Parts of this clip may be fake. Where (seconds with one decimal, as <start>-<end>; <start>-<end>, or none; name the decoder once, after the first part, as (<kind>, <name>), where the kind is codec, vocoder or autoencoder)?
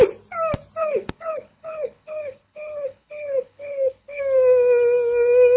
0.8-4.2 (codec, HILCodec)